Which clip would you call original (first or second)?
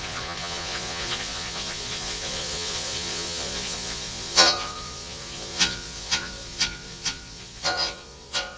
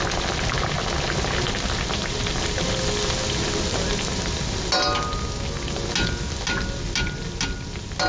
second